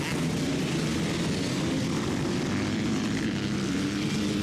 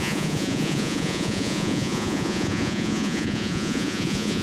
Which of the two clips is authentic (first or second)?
first